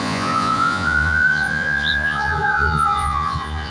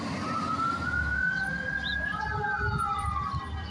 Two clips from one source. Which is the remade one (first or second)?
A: first